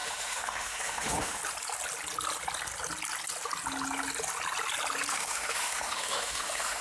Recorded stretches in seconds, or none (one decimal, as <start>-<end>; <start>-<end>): 1.4-5.1